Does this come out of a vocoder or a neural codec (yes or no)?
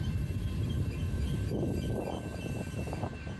yes